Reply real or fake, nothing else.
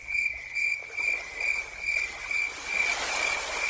real